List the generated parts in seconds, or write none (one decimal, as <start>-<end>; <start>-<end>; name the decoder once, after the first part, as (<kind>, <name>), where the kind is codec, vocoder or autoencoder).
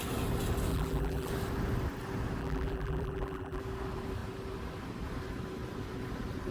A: 0.7-1.3 (vocoder, BigVGAN v2); 2.4-3.6